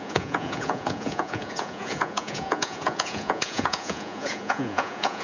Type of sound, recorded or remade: remade